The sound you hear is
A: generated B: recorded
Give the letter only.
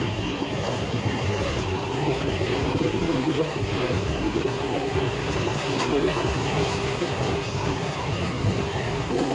A